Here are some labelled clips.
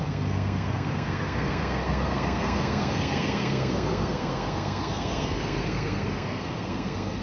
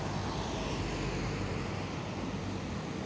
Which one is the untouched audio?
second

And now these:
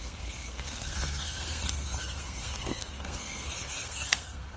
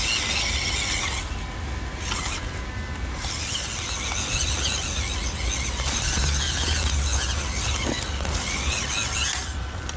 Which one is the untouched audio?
second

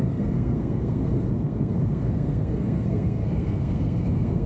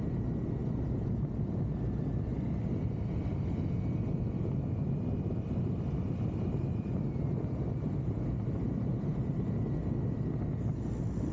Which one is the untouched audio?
second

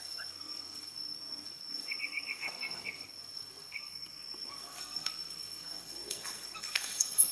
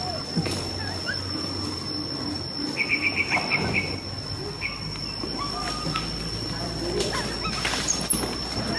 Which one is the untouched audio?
second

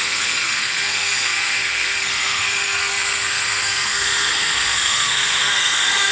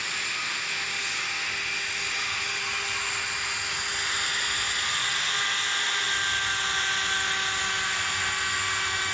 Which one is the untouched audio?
second